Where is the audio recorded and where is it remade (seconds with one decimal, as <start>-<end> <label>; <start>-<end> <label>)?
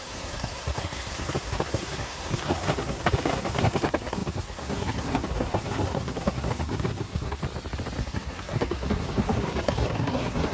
0.0-7.4 remade; 7.4-8.0 recorded; 8.0-10.5 remade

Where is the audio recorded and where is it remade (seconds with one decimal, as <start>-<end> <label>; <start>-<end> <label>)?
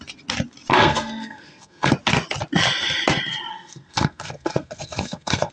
0.0-0.7 recorded; 0.7-1.9 remade; 1.9-3.5 recorded; 3.5-5.5 remade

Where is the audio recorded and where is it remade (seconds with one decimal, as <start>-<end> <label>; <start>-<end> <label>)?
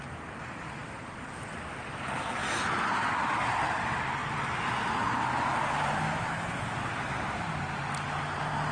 0.0-8.7 recorded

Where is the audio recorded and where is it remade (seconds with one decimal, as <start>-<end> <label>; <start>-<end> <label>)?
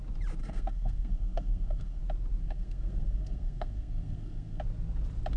0.0-0.4 recorded; 0.4-2.0 remade; 2.0-2.4 recorded; 2.4-4.6 remade; 4.6-5.4 recorded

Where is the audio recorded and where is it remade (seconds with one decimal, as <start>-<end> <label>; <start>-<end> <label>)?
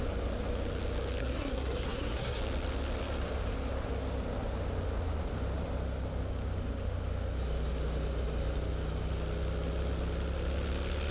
0.0-1.2 recorded; 1.2-2.4 remade; 2.4-11.1 recorded